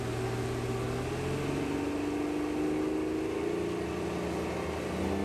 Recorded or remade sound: recorded